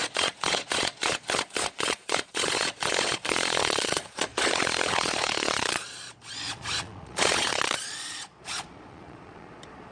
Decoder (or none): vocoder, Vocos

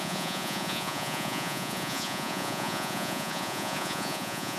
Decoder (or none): vocoder, Vocos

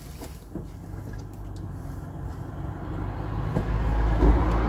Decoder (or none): none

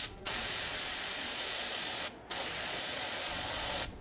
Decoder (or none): vocoder, Vocos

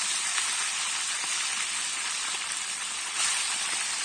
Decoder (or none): none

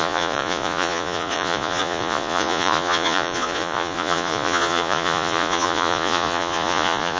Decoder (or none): vocoder, Vocos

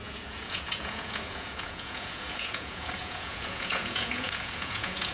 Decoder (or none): vocoder, Vocos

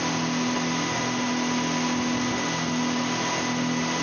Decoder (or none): none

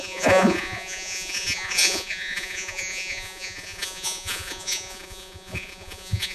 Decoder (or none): vocoder, Vocos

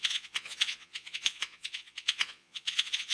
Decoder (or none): vocoder, Vocos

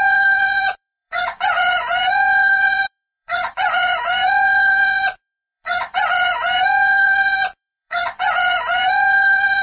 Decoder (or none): vocoder, Vocos